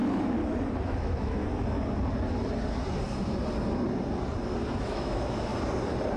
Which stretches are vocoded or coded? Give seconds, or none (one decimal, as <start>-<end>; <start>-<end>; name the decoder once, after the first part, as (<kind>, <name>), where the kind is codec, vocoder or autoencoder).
0.8-1.4 (autoencoder, DAC-VAE); 4.8-5.5